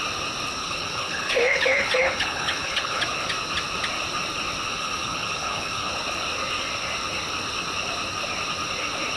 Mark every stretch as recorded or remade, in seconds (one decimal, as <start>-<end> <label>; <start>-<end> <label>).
0.0-0.6 recorded; 0.6-3.0 remade; 3.0-4.7 recorded; 4.7-5.9 remade; 5.9-9.2 recorded